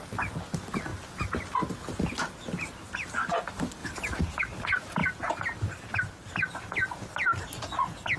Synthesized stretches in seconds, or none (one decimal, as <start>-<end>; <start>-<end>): 5.0-6.3

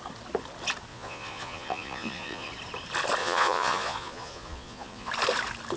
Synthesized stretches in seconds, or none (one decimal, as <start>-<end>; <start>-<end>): 0.9-2.5; 3.2-5.1

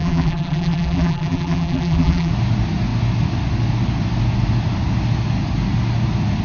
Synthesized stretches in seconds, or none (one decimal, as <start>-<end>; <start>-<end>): 0.0-2.3